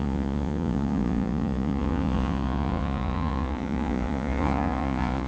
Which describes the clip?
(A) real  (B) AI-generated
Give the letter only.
B